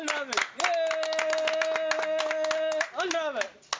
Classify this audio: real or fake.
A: real